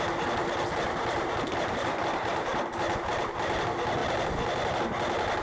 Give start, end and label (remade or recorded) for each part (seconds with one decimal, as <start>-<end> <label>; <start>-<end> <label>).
0.0-0.4 recorded; 0.4-3.6 remade; 3.6-5.4 recorded